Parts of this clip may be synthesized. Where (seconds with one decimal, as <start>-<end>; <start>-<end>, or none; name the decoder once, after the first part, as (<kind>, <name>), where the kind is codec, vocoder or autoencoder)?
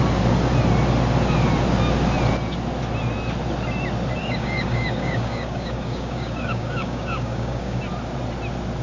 4.2-7.8 (codec, DAC)